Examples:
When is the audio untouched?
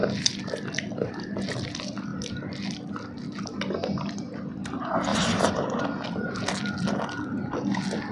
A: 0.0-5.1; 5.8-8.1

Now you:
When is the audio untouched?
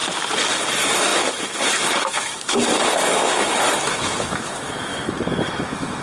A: 0.0-0.7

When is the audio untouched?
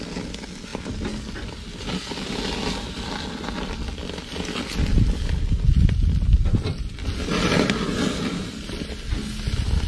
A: 0.0-9.9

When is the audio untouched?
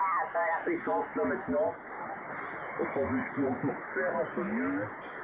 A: 0.0-5.2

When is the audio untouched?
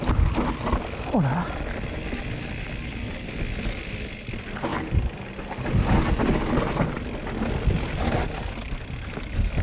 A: 0.0-9.6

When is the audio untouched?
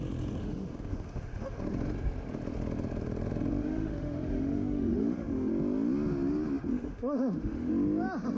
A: 0.0-0.4; 1.6-3.6; 5.5-6.7; 7.7-8.4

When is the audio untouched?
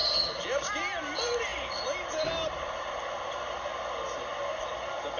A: 0.0-5.2